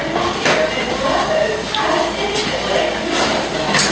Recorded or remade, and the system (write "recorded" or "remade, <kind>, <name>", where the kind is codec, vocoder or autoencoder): recorded